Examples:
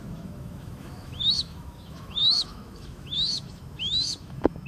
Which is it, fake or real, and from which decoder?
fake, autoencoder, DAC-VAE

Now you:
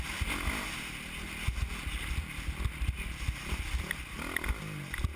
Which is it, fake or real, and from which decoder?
real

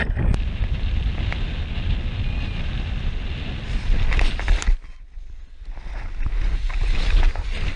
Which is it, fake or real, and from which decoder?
real